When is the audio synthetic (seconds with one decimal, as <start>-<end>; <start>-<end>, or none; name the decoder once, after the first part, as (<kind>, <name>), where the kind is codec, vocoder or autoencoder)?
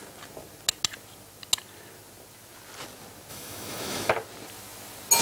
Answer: 3.3-4.1 (autoencoder, DAC-VAE)